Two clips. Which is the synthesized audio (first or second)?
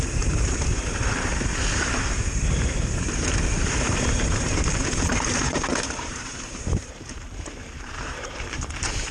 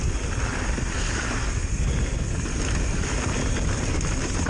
first